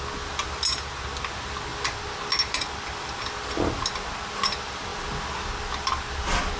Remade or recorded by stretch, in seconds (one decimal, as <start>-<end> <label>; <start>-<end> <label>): 0.0-6.6 recorded